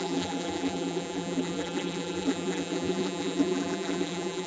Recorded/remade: remade